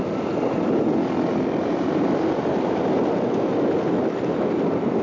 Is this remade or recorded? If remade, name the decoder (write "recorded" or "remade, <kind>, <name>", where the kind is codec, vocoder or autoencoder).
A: recorded